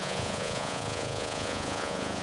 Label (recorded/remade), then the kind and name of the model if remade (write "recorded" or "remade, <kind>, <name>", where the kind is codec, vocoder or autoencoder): remade, vocoder, Vocos